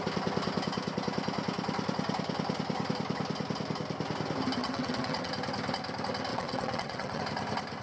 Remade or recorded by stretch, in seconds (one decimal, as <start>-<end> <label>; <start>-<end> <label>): 0.0-4.6 recorded; 4.6-5.3 remade; 5.3-6.3 recorded; 6.3-7.2 remade; 7.2-7.8 recorded